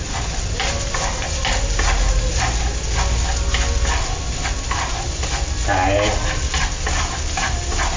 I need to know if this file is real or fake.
real